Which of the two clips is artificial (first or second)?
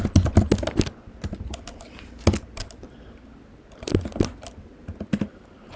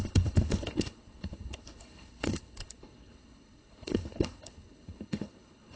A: second